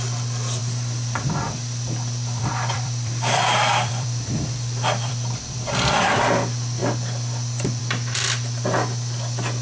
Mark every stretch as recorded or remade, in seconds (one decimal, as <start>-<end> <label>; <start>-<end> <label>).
0.0-0.6 recorded; 0.6-5.1 remade; 5.1-9.6 recorded